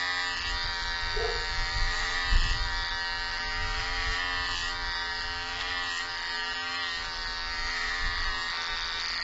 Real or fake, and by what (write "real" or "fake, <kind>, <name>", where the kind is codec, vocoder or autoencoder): real